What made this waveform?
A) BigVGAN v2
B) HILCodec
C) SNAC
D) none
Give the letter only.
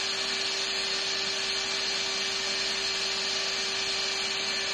D